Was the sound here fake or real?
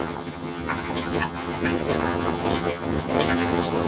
fake